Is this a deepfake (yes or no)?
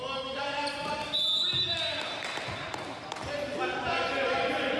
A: no